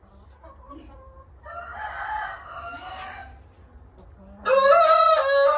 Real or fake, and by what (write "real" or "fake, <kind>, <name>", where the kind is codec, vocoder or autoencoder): real